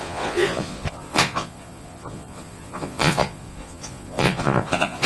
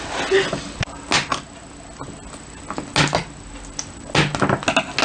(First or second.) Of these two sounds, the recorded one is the second